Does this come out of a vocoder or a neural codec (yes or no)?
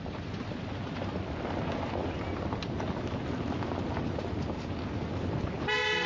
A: no